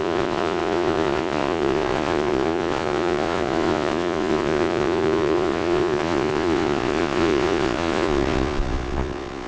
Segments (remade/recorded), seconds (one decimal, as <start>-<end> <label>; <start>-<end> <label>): 0.0-9.5 remade